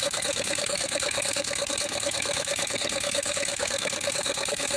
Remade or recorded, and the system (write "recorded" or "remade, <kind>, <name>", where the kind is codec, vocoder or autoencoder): remade, codec, SNAC